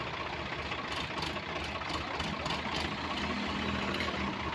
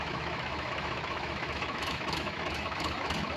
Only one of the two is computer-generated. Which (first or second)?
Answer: second